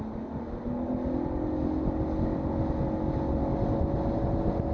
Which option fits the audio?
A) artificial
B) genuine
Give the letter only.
B